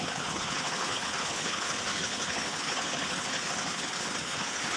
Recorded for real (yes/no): no